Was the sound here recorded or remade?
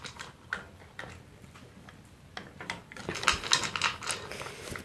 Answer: recorded